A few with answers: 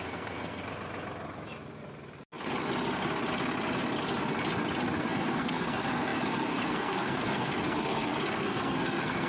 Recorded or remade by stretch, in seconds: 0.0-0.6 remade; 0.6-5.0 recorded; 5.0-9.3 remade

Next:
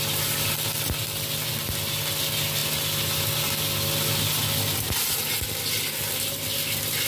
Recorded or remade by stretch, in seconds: 0.0-7.1 recorded

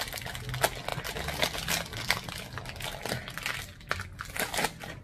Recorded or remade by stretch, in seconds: 0.0-5.0 recorded

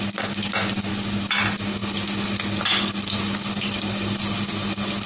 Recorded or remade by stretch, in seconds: 0.0-5.1 recorded

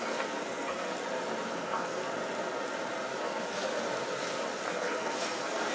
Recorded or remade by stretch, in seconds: 0.0-0.9 remade; 0.9-1.5 recorded; 1.5-2.0 remade; 2.0-3.2 recorded; 3.2-3.7 remade; 3.7-4.7 recorded; 4.7-5.7 remade